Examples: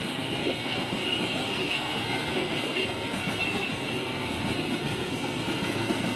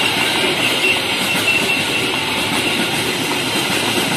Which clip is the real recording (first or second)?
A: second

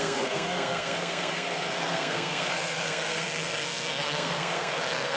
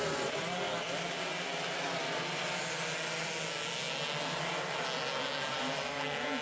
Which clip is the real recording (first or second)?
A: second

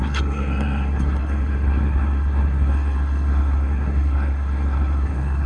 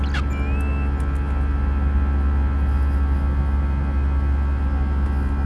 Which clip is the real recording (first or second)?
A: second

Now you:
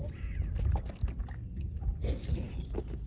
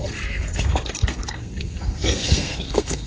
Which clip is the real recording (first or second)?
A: first